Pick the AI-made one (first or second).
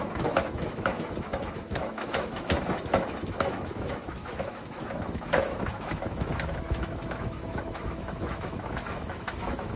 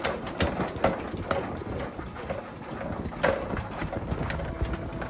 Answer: first